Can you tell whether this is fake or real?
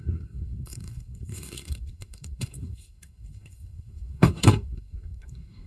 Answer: fake